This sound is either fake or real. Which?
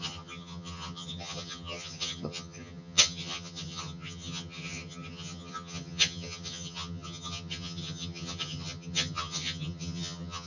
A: fake